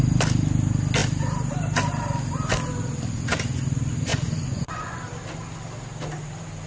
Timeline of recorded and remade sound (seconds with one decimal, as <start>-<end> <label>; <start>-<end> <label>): 0.0-4.1 recorded; 4.1-5.0 remade; 5.0-6.7 recorded